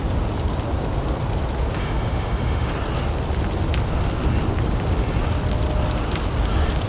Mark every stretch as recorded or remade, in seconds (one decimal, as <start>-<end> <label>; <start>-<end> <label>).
0.0-1.8 recorded; 1.8-2.7 remade; 2.7-6.9 recorded